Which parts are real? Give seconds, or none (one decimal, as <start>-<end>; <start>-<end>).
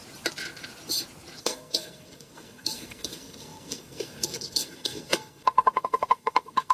0.0-1.4